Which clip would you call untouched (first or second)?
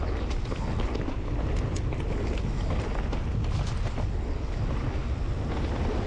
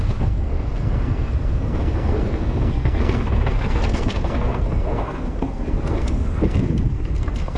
first